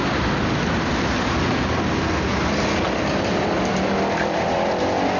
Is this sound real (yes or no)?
yes